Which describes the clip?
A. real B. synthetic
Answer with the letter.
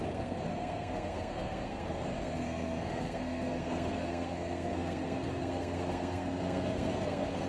B